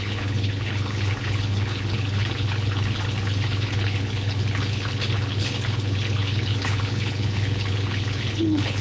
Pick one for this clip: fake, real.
fake